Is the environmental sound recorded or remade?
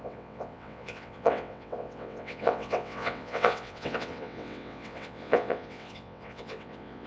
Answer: remade